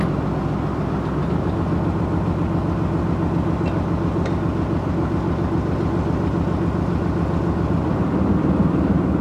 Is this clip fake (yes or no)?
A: no